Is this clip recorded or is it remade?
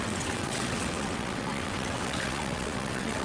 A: remade